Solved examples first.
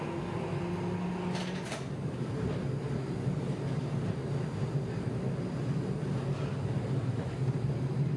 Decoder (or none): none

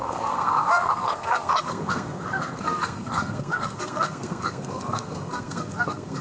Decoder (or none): codec, SNAC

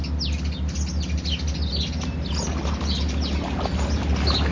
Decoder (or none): none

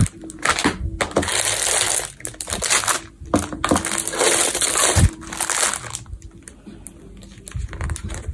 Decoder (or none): none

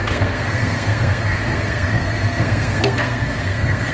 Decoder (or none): codec, SNAC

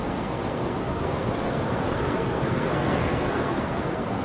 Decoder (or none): codec, SNAC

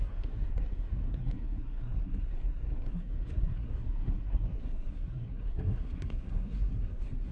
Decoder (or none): codec, SNAC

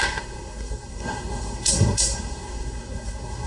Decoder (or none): codec, SNAC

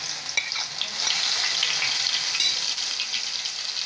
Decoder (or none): none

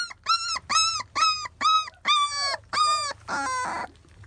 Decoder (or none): none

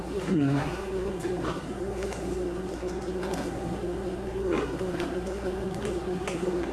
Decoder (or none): codec, SNAC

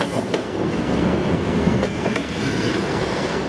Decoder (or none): codec, SNAC